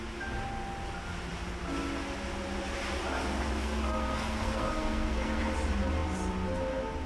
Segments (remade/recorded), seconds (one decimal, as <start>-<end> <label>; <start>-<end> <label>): 0.0-3.6 recorded; 3.6-5.4 remade; 5.4-7.1 recorded